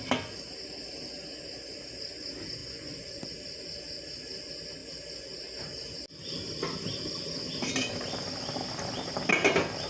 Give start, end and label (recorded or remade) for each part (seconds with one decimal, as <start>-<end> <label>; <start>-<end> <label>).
0.0-2.6 recorded; 2.6-3.2 remade; 3.2-9.9 recorded